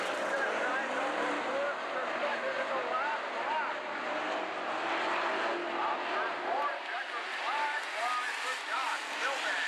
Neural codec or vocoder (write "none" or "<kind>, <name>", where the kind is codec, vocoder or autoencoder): none